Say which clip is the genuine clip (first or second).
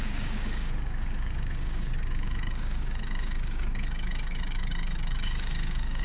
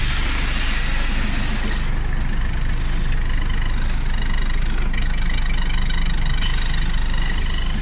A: second